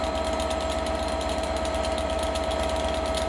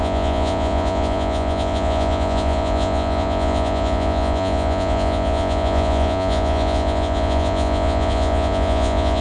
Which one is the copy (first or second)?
second